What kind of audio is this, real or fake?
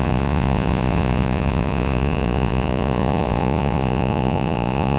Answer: fake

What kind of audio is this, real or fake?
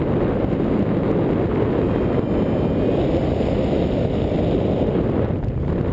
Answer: real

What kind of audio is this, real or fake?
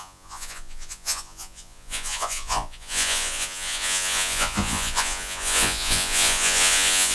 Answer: fake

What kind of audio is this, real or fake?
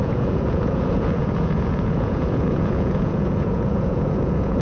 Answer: fake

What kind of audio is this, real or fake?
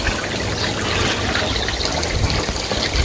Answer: real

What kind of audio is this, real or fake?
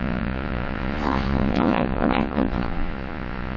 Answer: fake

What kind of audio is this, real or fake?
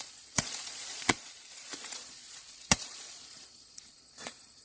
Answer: fake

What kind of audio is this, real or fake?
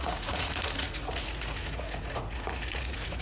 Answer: fake